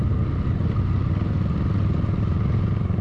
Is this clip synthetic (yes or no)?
no